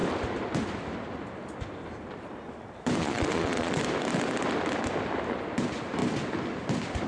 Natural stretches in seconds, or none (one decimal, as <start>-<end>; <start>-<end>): 0.0-3.0; 3.8-7.1